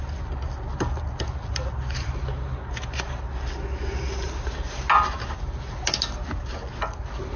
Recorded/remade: recorded